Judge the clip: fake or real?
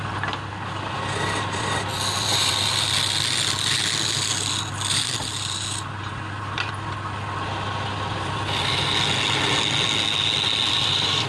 real